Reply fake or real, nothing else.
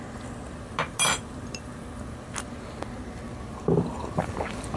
real